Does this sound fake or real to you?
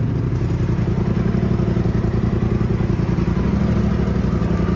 real